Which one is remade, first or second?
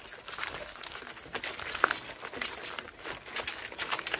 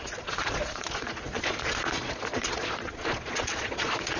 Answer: second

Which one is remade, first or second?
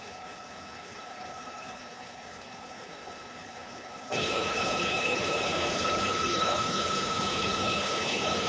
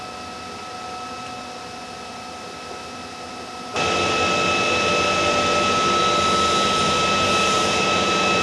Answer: first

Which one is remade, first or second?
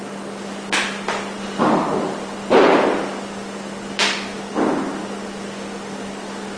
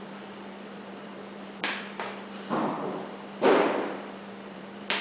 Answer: second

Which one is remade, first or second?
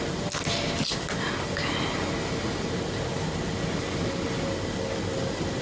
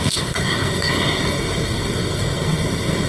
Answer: second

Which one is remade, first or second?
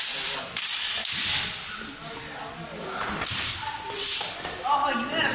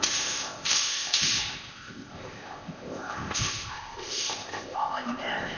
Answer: second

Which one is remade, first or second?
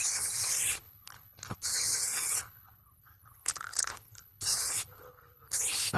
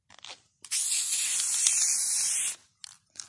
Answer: first